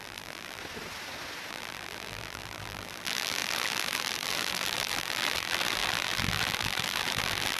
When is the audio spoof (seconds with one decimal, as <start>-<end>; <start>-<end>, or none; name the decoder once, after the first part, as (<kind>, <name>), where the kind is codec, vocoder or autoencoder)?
0.0-0.6 (vocoder, BigVGAN v2); 1.5-7.6